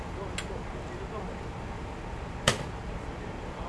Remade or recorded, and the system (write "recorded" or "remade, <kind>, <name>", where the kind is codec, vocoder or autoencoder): recorded